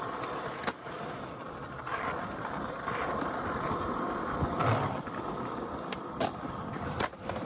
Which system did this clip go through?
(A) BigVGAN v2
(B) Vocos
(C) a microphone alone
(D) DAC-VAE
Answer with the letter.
A